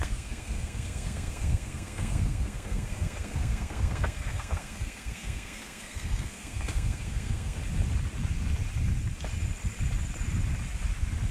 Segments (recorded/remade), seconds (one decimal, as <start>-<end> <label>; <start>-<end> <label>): 0.0-7.6 remade; 7.6-11.3 recorded